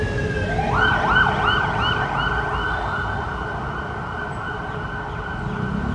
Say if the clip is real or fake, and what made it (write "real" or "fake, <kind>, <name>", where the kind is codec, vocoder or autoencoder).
real